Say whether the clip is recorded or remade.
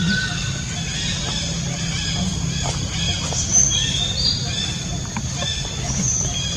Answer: recorded